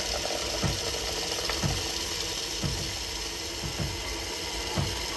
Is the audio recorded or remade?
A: recorded